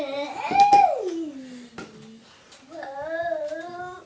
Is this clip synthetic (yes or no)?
no